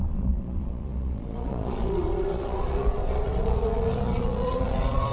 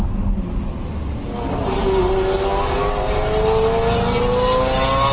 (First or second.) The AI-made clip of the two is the first